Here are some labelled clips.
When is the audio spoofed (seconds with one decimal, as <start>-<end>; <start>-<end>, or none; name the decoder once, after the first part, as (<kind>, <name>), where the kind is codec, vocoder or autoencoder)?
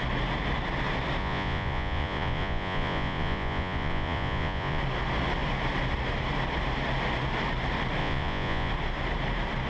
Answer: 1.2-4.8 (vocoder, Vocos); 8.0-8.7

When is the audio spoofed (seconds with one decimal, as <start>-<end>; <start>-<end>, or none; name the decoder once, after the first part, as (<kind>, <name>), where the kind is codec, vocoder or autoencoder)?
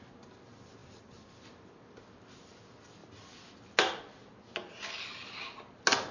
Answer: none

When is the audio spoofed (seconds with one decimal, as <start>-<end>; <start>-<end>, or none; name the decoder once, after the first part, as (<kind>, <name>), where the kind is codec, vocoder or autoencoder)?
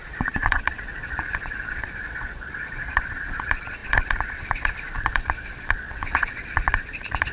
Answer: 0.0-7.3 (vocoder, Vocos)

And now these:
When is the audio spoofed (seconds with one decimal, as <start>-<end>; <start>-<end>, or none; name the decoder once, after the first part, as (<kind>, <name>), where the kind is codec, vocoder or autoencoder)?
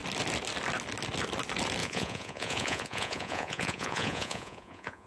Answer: 1.8-5.1 (vocoder, Vocos)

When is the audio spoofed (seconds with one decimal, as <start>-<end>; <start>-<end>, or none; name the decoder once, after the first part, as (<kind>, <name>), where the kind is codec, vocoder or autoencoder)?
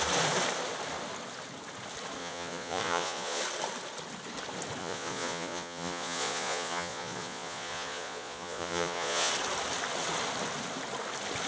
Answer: 2.2-3.4 (vocoder, Vocos); 4.8-9.3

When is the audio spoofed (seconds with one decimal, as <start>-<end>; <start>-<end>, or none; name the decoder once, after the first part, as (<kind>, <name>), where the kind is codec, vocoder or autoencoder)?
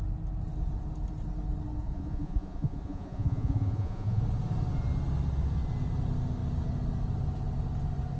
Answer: 1.8-4.2 (vocoder, Vocos)